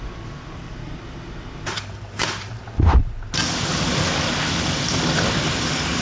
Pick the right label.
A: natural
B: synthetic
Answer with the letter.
B